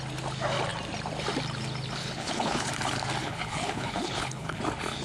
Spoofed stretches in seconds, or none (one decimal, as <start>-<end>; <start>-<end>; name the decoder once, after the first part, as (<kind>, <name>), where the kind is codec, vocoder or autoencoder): 2.0-2.7 (codec, HILCodec); 3.2-4.6